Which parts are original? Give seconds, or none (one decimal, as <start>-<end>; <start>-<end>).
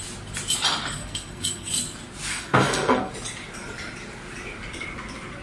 0.0-1.0; 1.7-2.3; 3.1-5.4